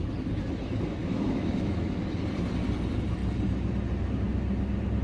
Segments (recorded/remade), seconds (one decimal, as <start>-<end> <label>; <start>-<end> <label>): 0.0-1.0 recorded; 1.0-2.0 remade; 2.0-5.0 recorded